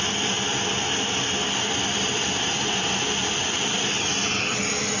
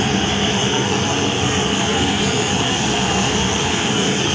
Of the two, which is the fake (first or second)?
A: second